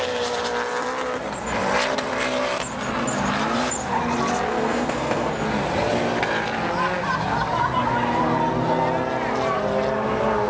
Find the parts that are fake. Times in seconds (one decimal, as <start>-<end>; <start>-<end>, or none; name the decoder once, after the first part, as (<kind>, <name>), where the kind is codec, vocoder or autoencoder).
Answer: 4.5-5.3 (codec, SNAC)